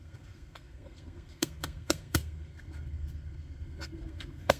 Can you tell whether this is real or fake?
fake